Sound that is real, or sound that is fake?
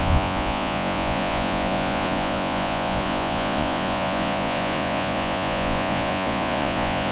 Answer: fake